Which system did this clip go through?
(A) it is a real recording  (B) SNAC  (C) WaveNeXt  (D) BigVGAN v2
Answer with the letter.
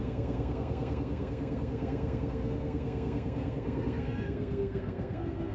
B